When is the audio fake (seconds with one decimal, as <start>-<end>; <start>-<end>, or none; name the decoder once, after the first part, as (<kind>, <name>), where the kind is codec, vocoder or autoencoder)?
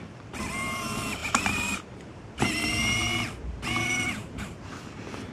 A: 1.2-4.4 (vocoder, BigVGAN v2)